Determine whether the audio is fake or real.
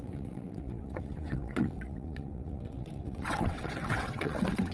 fake